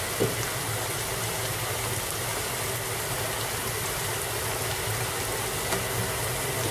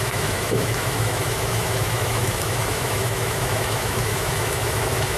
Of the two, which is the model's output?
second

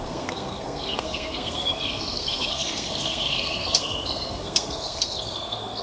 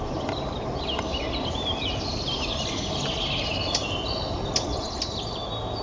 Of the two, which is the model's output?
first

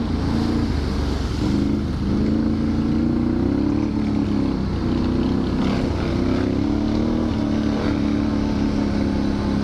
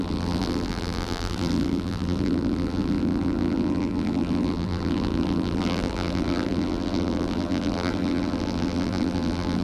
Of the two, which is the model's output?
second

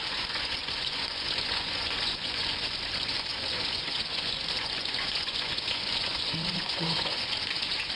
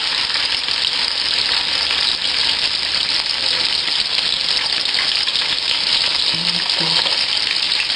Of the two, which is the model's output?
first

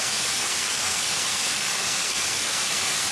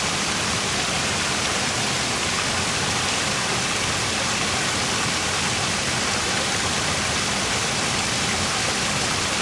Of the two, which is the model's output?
first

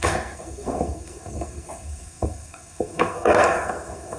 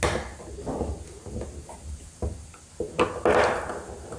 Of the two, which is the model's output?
first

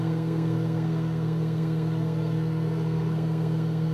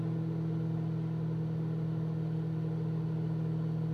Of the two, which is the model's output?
first